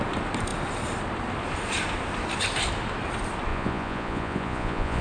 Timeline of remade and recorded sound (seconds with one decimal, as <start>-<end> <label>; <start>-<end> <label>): 0.0-3.5 recorded; 3.5-5.0 remade